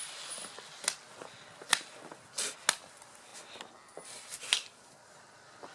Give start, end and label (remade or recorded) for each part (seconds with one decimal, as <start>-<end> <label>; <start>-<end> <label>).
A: 0.0-5.7 recorded